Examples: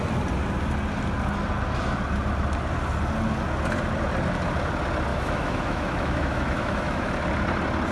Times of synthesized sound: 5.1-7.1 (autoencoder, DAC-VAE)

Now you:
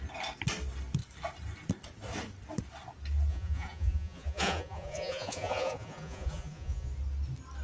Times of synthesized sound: 3.3-6.9 (vocoder, Vocos)

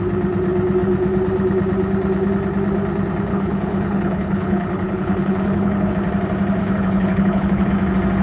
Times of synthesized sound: 3.3-5.9 (codec, HILCodec); 6.6-7.7

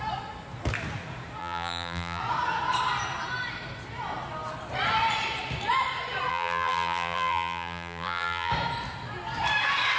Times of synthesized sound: 1.4-2.2 (vocoder, BigVGAN v2); 6.3-8.5